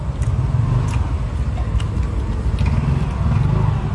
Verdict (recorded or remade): recorded